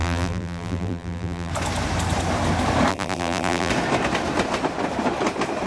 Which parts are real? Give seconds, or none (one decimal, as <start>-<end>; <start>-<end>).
1.5-2.9; 3.7-5.7